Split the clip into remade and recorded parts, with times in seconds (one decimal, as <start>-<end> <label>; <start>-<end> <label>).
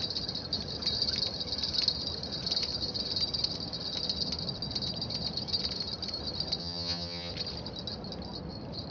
0.0-6.6 recorded; 6.6-7.3 remade; 7.3-8.9 recorded